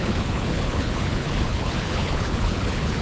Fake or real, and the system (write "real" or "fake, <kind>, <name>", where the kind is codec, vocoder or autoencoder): fake, codec, HILCodec